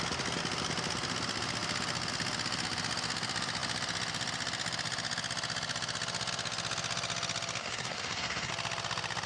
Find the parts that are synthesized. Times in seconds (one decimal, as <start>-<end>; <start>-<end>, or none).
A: 7.6-8.5